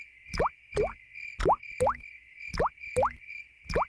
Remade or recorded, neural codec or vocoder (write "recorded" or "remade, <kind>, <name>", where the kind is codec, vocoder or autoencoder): recorded